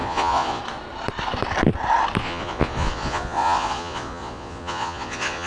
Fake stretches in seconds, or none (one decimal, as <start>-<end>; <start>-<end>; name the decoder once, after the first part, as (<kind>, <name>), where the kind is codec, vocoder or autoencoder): 0.0-0.6 (vocoder, Vocos); 2.2-5.5